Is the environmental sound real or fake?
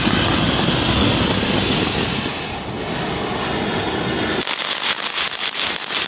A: real